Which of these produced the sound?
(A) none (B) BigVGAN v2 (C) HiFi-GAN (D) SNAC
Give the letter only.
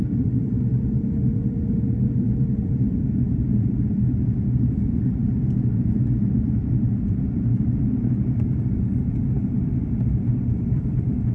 B